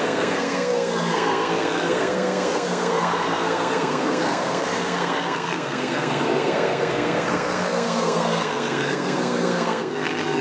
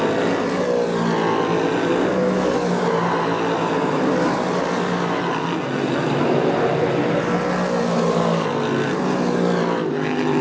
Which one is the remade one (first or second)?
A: first